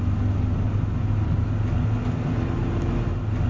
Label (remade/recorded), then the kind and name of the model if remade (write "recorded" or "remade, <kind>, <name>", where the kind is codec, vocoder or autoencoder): recorded